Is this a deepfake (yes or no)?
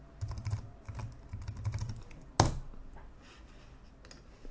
no